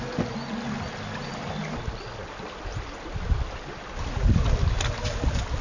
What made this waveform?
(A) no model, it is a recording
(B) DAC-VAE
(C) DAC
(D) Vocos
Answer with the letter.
A